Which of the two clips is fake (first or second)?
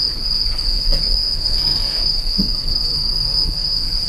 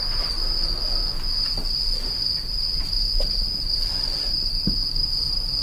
first